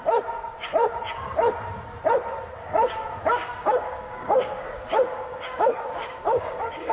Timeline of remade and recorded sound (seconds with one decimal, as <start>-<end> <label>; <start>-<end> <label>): 0.0-2.6 recorded; 2.6-6.9 remade